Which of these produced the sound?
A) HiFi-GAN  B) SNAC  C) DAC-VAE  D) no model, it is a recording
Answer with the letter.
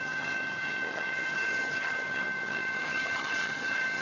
A